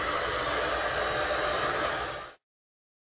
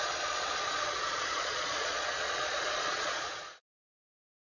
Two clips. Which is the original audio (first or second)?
first